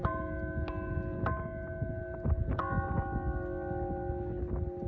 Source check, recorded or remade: recorded